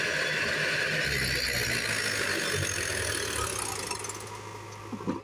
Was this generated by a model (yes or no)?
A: no